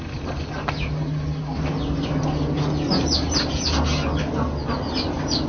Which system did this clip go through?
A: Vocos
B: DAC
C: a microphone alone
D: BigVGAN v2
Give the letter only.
C